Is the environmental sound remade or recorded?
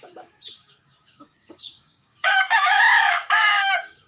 remade